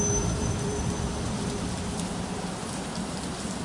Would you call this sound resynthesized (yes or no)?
yes